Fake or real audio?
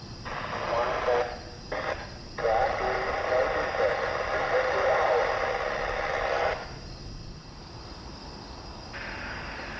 real